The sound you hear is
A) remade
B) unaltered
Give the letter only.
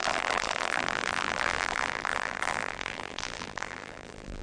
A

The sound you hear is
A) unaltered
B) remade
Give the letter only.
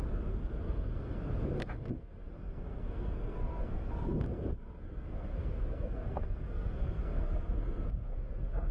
B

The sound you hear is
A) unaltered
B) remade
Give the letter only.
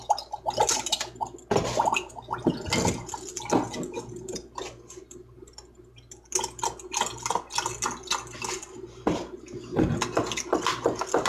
A